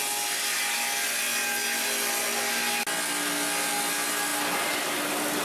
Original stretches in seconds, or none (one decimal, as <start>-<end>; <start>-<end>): 0.0-5.4